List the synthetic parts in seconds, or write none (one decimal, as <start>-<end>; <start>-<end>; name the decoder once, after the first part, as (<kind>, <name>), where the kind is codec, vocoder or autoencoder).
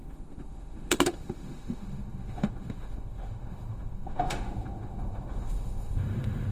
0.0-6.5 (autoencoder, DAC-VAE)